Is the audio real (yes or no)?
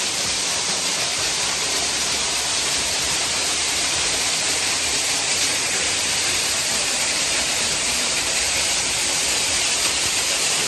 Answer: no